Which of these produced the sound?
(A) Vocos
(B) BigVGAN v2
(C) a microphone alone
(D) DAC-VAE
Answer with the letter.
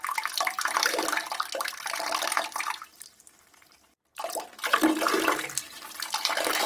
B